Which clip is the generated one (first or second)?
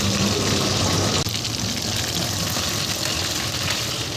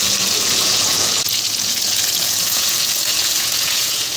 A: second